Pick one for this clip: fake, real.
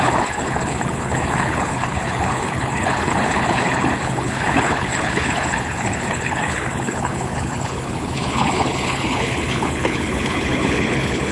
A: fake